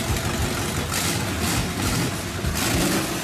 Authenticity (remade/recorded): recorded